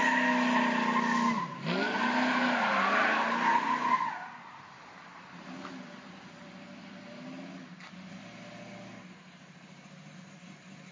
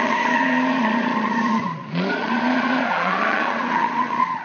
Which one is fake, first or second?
second